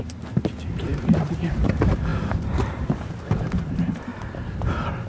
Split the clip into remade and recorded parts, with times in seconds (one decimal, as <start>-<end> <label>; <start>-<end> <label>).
0.0-4.1 remade; 4.1-5.1 recorded